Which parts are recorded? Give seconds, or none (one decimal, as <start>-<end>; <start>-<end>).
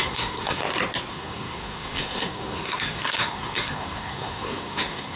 0.6-1.1